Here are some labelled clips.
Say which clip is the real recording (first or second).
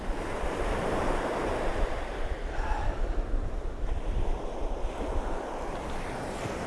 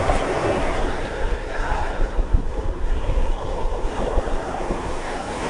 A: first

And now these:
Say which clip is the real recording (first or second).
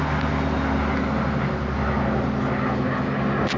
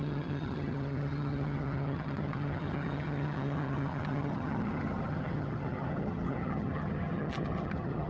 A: first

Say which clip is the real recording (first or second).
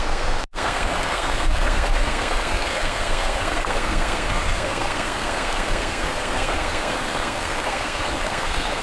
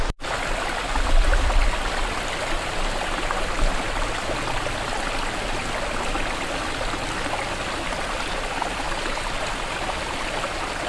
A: second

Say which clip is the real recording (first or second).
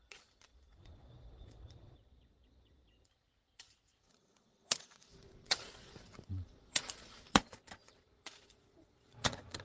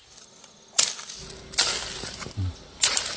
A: second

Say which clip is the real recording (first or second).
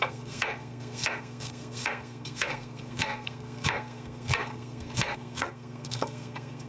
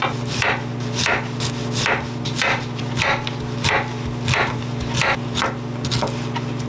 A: second